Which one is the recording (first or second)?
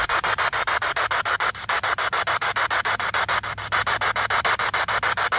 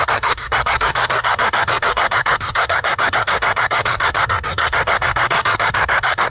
first